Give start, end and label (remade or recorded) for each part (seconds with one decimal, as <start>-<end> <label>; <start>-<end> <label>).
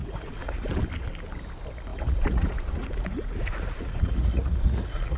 0.0-0.7 remade; 0.7-1.9 recorded; 1.9-5.2 remade